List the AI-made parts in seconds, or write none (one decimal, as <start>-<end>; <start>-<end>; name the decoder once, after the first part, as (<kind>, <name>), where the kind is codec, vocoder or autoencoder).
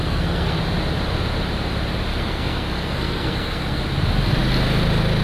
0.0-0.6 (codec, SNAC); 2.1-3.8